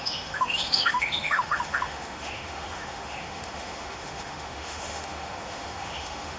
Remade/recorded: remade